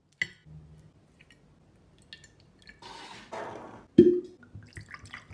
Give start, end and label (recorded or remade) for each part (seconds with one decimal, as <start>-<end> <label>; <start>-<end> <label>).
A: 0.0-5.3 recorded